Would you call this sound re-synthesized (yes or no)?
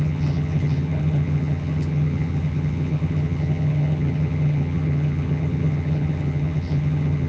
yes